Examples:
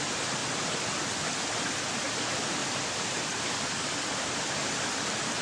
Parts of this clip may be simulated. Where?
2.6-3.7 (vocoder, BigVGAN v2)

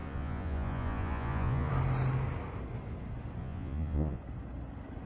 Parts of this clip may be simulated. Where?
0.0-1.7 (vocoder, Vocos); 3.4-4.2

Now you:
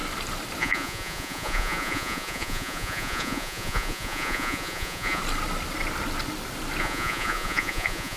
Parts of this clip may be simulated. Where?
0.6-5.2 (vocoder, Vocos); 6.8-8.2

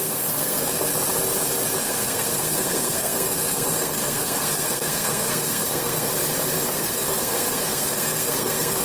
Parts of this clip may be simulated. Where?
0.0-0.9 (codec, SNAC); 1.8-6.1; 6.7-8.8